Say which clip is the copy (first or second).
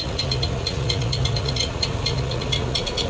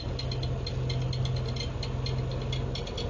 first